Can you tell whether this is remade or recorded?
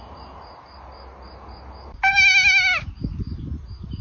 recorded